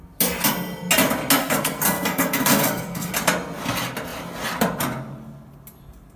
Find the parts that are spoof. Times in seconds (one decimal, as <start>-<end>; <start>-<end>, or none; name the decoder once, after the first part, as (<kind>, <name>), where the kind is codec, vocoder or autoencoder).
1.4-3.1 (codec, SNAC)